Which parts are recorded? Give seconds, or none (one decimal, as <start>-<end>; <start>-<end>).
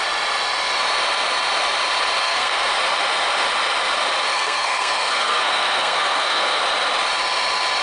0.0-2.2; 2.7-4.3; 6.6-7.8